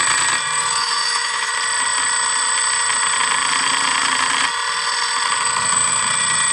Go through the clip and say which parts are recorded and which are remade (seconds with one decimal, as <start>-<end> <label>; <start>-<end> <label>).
0.0-0.8 recorded; 0.8-1.5 remade; 1.5-6.5 recorded